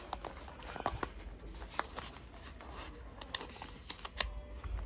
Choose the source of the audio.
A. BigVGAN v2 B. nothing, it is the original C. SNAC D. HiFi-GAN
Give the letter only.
B